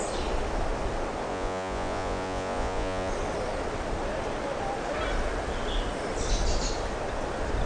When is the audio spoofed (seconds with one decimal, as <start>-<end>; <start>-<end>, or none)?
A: 1.3-3.1

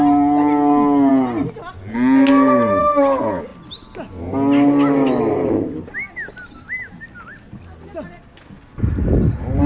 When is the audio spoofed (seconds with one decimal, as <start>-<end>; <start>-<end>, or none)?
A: none

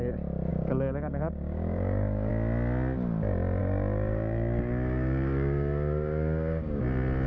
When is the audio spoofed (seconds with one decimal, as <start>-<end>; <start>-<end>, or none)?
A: 0.5-2.3; 3.6-6.8

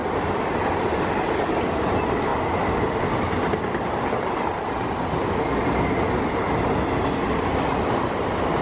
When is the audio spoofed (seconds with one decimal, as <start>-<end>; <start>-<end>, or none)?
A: none

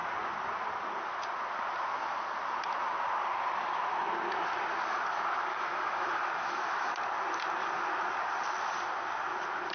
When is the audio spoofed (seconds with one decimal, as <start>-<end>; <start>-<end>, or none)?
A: 5.5-6.9

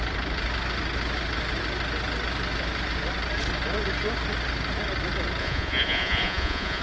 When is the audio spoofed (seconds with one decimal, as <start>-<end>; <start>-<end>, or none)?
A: 5.4-6.8

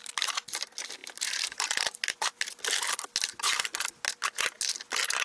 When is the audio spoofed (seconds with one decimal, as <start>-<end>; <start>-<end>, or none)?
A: none

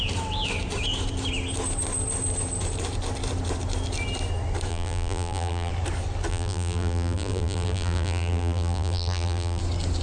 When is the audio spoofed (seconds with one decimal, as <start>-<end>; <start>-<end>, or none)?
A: 4.7-5.7; 6.3-9.6